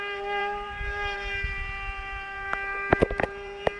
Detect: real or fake fake